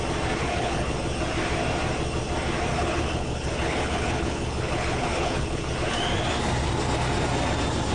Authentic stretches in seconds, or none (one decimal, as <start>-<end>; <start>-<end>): 0.0-0.4; 0.9-2.7; 5.7-7.9